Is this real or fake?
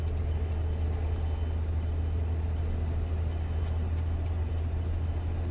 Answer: real